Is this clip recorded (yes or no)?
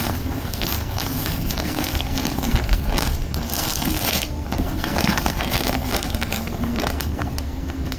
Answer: no